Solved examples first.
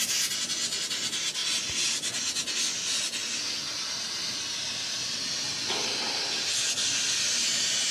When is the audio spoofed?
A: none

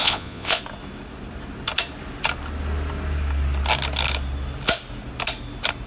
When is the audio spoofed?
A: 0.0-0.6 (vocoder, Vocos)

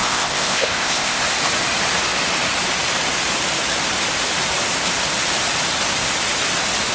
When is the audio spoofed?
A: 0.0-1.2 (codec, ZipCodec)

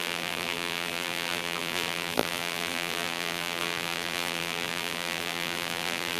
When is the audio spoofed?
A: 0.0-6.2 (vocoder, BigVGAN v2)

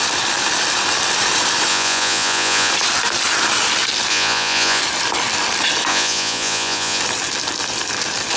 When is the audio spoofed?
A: 1.7-2.7 (vocoder, Vocos); 4.1-4.8; 5.9-7.0

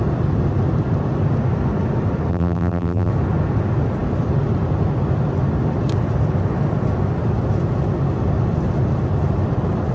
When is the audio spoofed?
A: 2.3-3.1 (vocoder, BigVGAN v2)

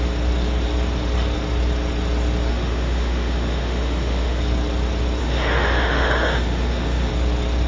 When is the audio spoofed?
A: 2.5-4.4 (autoencoder, DAC-VAE); 5.2-7.1

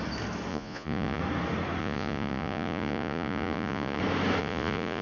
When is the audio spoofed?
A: 0.5-1.2 (vocoder, Vocos); 1.8-4.0; 4.4-5.0